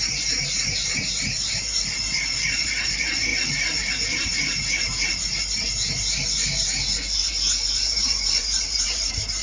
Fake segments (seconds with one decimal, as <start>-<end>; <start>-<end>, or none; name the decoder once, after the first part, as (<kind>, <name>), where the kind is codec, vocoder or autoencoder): 0.0-4.3 (vocoder, BigVGAN v2); 7.5-9.4